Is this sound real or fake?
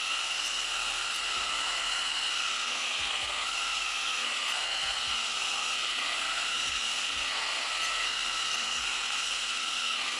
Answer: fake